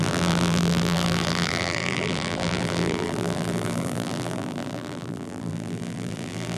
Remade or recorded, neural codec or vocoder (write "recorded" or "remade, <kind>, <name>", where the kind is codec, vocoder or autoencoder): remade, vocoder, BigVGAN v2